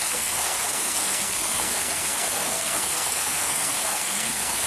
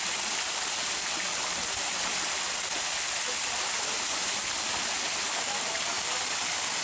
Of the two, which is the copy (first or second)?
first